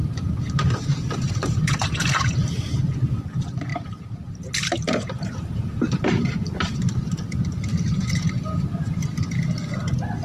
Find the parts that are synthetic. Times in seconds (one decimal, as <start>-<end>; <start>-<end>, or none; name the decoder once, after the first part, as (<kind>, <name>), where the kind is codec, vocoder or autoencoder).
0.0-2.6 (vocoder, BigVGAN v2); 3.7-6.0; 7.7-9.2